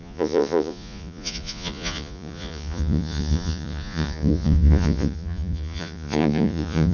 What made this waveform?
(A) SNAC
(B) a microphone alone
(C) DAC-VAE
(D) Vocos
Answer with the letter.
D